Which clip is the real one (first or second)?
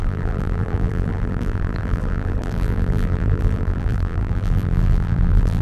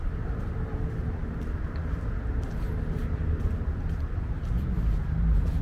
second